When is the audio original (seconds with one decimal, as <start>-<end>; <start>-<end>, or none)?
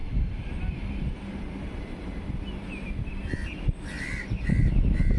2.4-5.2